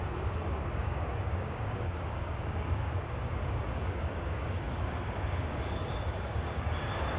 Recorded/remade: remade